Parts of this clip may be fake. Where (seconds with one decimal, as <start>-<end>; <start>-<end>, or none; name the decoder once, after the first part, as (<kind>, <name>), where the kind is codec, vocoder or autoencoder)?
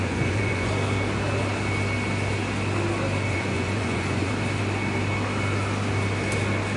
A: 0.0-0.7 (vocoder, Vocos); 3.3-4.3